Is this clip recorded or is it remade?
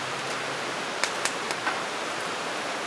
remade